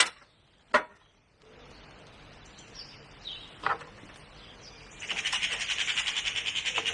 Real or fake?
real